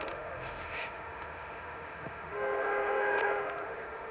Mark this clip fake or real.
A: fake